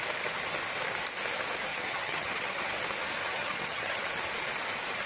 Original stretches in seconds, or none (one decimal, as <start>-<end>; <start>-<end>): 0.0-1.7; 2.7-3.2; 4.0-5.1